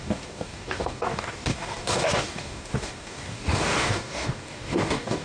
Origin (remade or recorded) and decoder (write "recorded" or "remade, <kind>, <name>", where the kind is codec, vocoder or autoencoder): remade, codec, DAC